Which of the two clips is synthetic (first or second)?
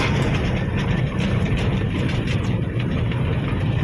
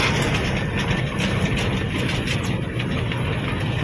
first